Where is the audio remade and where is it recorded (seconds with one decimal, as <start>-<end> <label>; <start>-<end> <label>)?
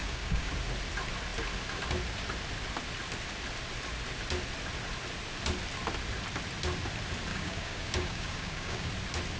0.0-0.5 remade; 0.5-7.3 recorded; 7.3-8.9 remade; 8.9-9.4 recorded